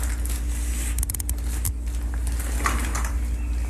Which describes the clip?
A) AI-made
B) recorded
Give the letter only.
B